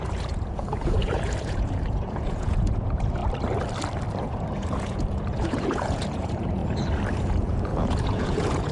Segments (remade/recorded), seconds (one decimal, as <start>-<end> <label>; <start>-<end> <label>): 0.0-3.2 remade; 3.2-4.2 recorded; 4.2-6.6 remade; 6.6-7.2 recorded; 7.2-8.7 remade